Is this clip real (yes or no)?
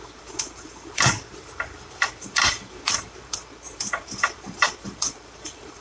no